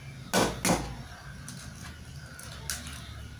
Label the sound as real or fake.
real